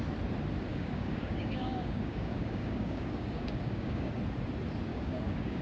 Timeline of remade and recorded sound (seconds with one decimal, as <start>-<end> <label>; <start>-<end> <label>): 0.0-0.7 recorded; 0.7-4.1 remade; 4.1-4.9 recorded; 4.9-5.6 remade